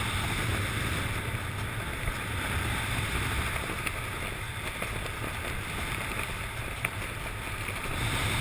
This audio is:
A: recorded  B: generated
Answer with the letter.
A